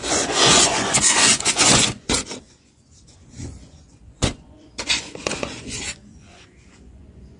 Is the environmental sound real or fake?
fake